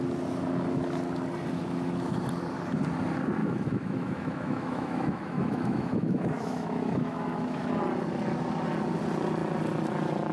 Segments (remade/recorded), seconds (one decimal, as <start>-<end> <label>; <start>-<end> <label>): 0.0-3.4 recorded; 3.4-7.7 remade; 7.7-10.3 recorded